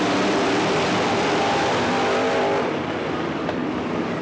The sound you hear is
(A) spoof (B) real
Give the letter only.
A